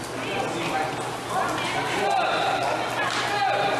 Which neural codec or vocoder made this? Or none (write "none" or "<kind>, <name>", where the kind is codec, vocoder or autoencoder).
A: none